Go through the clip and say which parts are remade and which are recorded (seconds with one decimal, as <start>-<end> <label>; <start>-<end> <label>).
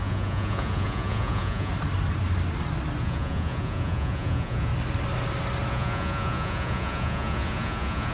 0.0-1.7 remade; 1.7-3.0 recorded; 3.0-4.7 remade; 4.7-5.7 recorded; 5.7-8.1 remade